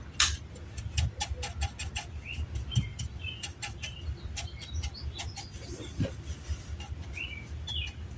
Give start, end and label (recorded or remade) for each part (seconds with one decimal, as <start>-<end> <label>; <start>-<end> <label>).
0.0-8.2 recorded

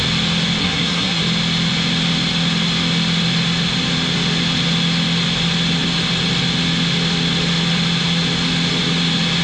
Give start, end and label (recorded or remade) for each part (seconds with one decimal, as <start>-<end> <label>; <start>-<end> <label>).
0.0-0.6 recorded; 0.6-1.2 remade; 1.2-9.4 recorded

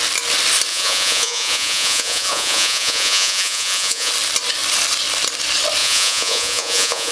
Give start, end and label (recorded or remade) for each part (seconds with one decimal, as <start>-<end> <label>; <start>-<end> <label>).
0.0-0.7 recorded; 0.7-4.1 remade; 4.1-5.8 recorded; 5.8-7.1 remade

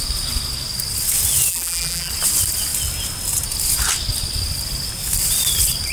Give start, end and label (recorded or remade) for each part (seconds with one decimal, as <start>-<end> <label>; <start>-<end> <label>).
0.0-1.5 recorded; 1.5-2.1 remade; 2.1-5.9 recorded

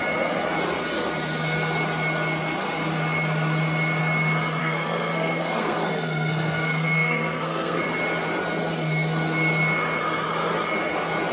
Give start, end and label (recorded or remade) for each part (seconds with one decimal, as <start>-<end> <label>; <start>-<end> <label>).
0.0-4.6 recorded; 4.6-7.8 remade; 7.8-11.3 recorded

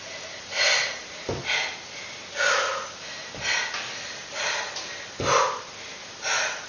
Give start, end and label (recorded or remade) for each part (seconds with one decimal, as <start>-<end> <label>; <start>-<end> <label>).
0.0-6.7 recorded